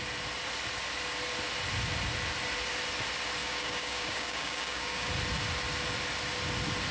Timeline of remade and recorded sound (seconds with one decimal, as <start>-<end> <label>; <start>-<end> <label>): 0.0-3.4 recorded; 3.4-5.1 remade; 5.1-6.9 recorded